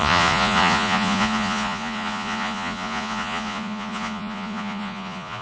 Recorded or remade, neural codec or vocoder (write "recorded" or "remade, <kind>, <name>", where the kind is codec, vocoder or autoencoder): remade, vocoder, Vocos